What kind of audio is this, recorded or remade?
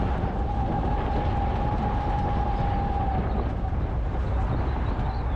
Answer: recorded